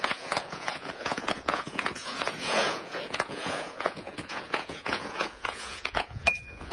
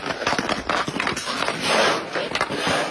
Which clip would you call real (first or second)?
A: second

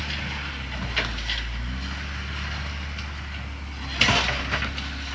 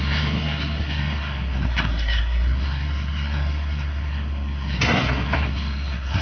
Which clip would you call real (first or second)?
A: first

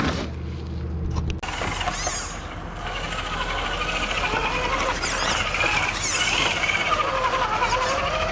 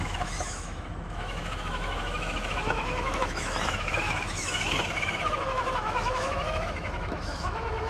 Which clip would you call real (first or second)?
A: first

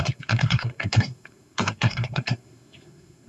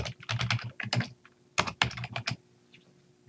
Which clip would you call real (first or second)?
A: second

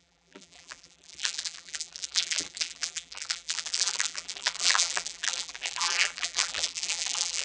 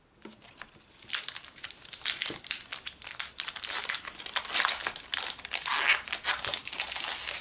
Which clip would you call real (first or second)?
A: second